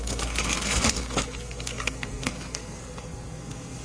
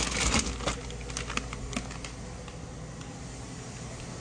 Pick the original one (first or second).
second